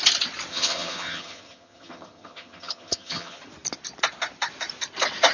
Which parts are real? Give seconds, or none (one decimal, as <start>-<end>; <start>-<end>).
0.0-0.5; 3.4-5.3